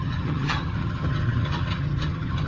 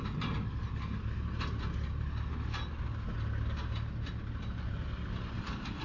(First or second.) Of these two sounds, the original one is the second